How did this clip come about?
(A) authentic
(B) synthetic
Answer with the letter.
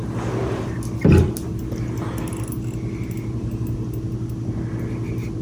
A